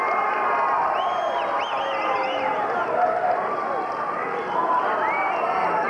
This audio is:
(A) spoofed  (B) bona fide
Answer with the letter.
B